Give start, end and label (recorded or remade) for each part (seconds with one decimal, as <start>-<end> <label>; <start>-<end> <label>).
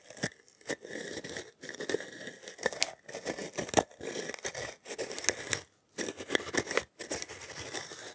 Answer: 0.0-8.1 recorded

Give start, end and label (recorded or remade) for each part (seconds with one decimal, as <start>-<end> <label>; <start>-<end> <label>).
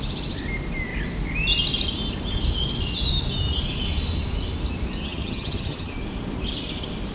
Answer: 0.0-5.0 recorded; 5.0-5.9 remade; 5.9-7.1 recorded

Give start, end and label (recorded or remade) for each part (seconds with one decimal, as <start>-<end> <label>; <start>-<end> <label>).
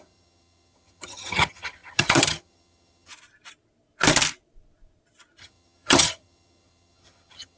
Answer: 0.0-3.1 remade; 3.1-5.4 recorded; 5.4-7.6 remade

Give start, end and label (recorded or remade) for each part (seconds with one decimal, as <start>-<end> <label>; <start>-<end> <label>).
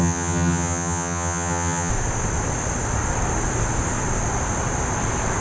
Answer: 0.0-1.9 remade; 1.9-5.4 recorded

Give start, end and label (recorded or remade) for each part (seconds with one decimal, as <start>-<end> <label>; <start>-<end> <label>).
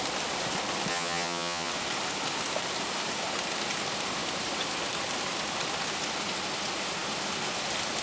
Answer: 0.0-0.9 recorded; 0.9-1.7 remade; 1.7-8.0 recorded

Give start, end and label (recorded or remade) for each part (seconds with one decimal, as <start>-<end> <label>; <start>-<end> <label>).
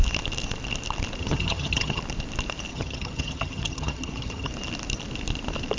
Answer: 0.0-1.2 recorded; 1.2-2.0 remade; 2.0-2.7 recorded; 2.7-4.5 remade; 4.5-5.8 recorded